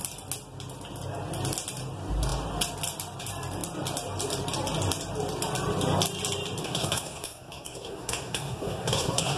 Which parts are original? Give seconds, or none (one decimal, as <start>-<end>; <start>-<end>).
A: 0.0-6.6

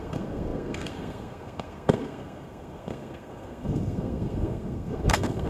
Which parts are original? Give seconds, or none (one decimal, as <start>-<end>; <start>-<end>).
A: none

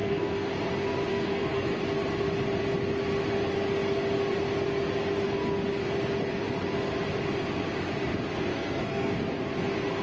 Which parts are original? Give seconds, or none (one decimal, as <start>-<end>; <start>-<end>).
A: 0.5-1.1; 1.8-8.5; 9.1-10.0

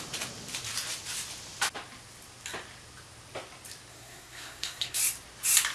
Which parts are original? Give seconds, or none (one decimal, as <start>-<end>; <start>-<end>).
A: 0.0-3.9; 5.0-5.7

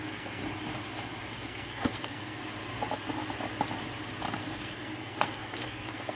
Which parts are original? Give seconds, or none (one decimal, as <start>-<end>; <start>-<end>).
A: 0.4-1.3; 2.4-4.4

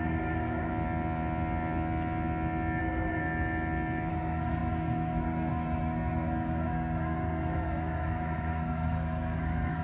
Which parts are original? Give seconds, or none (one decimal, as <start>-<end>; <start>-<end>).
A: 0.7-2.8; 3.2-4.1